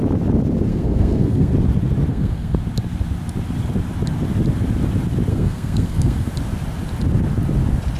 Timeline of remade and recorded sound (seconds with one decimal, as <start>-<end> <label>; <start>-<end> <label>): 0.0-0.7 recorded; 0.7-1.5 remade; 1.5-2.1 recorded; 2.1-2.6 remade; 2.6-5.3 recorded; 5.3-6.3 remade; 6.3-8.0 recorded